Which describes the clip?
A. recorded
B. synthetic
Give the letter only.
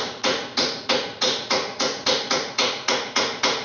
B